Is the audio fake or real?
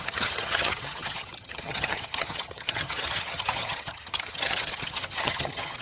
fake